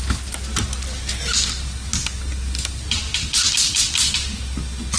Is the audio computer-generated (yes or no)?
no